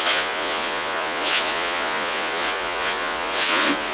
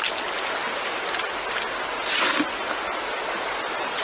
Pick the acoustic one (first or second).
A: second